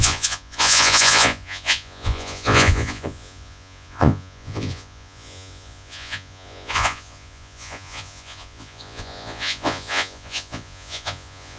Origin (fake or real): fake